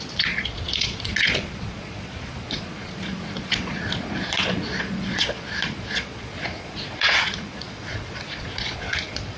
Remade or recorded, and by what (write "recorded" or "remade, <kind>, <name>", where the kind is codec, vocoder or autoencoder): remade, vocoder, Vocos